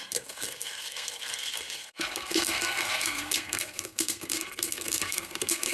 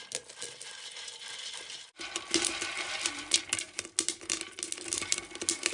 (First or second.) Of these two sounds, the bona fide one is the second